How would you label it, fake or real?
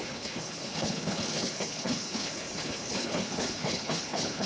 fake